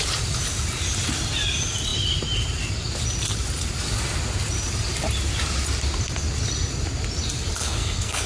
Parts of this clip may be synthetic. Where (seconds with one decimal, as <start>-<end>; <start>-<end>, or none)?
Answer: 7.6-8.3